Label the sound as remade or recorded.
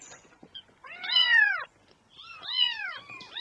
remade